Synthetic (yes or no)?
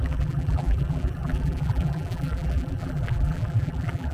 yes